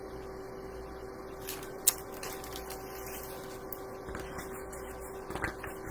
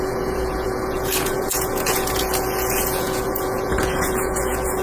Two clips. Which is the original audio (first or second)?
first